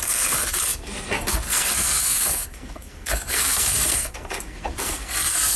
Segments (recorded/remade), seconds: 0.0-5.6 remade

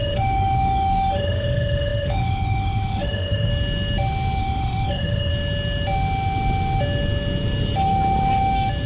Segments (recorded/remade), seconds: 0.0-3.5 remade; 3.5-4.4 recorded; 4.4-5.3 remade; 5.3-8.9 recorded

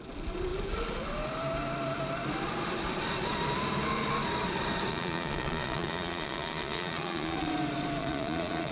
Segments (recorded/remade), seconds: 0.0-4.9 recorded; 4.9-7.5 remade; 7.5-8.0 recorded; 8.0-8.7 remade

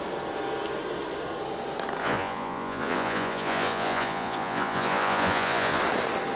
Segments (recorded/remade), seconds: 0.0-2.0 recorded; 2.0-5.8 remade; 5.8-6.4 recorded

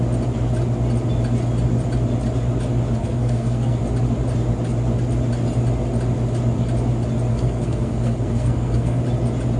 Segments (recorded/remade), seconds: 0.0-3.0 recorded; 3.0-3.8 remade; 3.8-7.3 recorded; 7.3-9.0 remade; 9.0-9.6 recorded